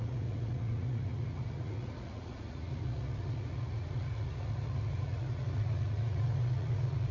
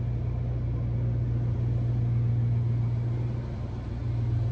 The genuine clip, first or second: second